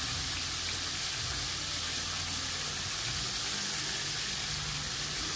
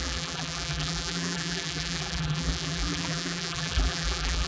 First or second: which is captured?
first